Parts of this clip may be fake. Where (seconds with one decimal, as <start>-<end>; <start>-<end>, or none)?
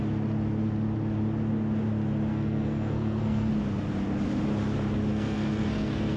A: 2.3-3.5; 5.1-6.2